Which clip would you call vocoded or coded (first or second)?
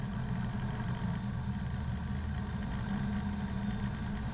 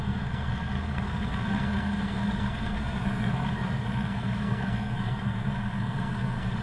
second